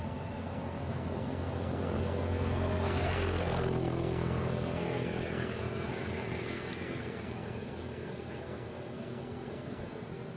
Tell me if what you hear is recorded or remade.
remade